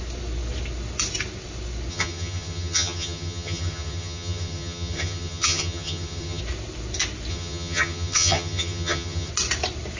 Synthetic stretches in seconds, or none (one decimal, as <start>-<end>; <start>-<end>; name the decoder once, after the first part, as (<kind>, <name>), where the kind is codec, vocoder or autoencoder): 1.9-6.4 (vocoder, HiFi-GAN); 7.3-9.3